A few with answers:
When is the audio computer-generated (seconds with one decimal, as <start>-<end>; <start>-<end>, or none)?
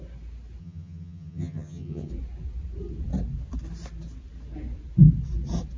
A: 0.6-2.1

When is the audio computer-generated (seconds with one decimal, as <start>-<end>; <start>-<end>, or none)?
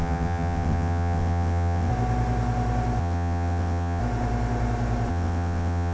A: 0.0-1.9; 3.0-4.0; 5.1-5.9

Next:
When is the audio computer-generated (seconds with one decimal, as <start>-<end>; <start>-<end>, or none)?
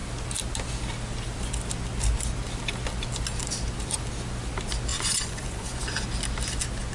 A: 4.9-5.8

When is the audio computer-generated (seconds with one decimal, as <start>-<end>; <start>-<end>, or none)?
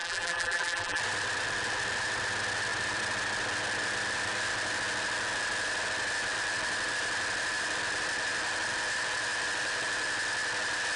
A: 0.0-1.0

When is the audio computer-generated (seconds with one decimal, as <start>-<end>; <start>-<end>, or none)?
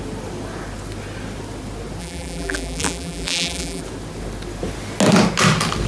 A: 2.0-3.8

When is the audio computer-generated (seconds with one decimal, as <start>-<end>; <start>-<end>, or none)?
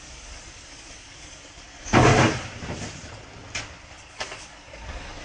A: 0.0-2.1; 4.0-5.2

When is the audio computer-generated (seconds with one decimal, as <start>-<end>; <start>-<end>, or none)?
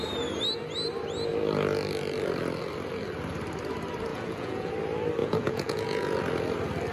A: 4.1-4.7; 5.2-6.2